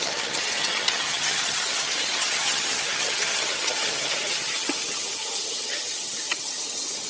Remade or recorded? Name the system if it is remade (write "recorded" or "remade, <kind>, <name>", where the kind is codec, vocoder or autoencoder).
remade, vocoder, HiFi-GAN